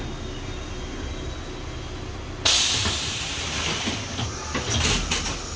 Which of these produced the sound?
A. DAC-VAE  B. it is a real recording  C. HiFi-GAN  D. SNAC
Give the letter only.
B